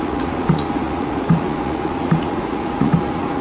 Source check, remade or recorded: remade